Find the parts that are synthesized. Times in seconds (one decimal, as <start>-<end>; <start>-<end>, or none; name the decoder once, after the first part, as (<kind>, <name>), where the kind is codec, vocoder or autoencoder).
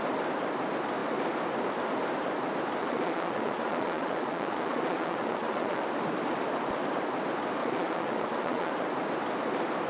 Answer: 2.8-5.8 (vocoder, Vocos); 7.6-8.7